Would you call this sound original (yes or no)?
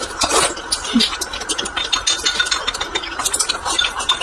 yes